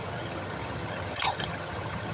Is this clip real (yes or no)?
no